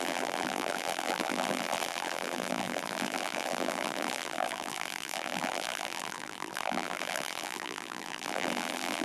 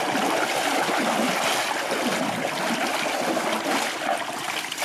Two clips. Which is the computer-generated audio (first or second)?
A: first